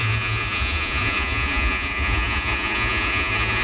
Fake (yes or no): yes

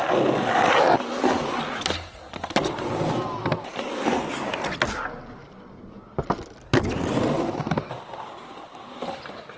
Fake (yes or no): no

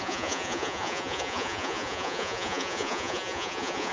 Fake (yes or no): yes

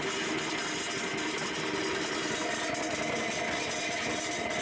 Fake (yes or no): no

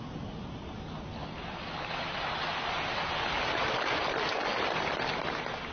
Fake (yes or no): no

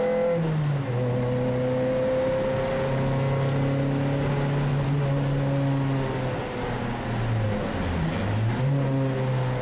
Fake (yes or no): no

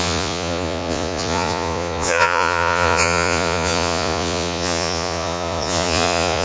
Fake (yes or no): yes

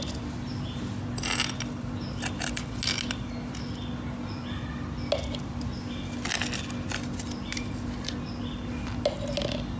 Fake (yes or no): no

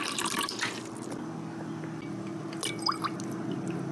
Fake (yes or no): no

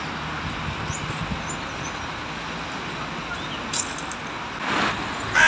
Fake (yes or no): no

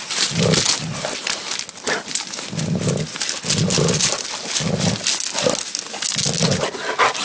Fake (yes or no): no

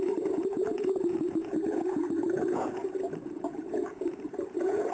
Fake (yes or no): yes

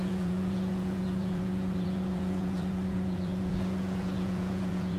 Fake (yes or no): yes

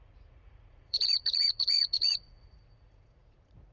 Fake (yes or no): yes